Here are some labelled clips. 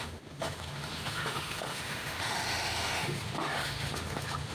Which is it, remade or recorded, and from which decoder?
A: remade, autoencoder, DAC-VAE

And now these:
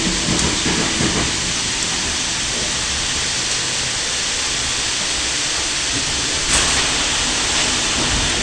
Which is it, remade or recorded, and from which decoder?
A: recorded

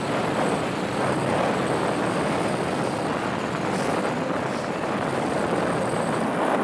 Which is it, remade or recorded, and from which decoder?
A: recorded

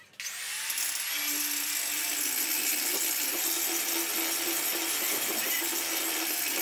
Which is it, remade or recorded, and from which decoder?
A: recorded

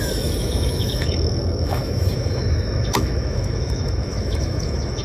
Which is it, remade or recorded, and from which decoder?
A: remade, autoencoder, DAC-VAE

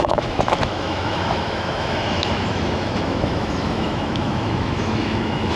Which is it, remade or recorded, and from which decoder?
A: remade, autoencoder, DAC-VAE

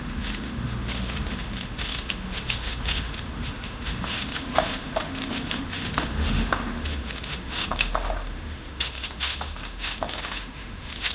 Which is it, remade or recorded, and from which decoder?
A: remade, autoencoder, DAC-VAE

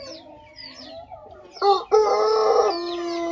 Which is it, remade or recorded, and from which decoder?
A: recorded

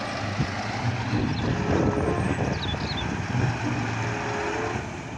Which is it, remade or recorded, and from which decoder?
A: recorded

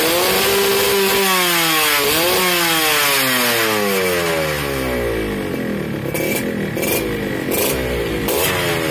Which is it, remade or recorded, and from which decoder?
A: recorded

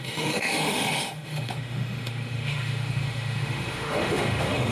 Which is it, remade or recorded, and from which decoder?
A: remade, autoencoder, DAC-VAE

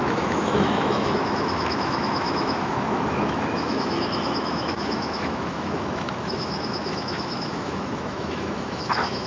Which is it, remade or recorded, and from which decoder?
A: remade, autoencoder, DAC-VAE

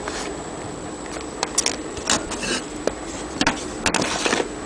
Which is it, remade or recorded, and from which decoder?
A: recorded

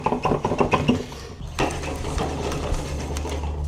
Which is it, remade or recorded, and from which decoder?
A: recorded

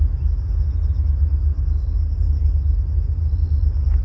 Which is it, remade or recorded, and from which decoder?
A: recorded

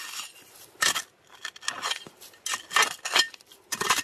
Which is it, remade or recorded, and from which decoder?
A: recorded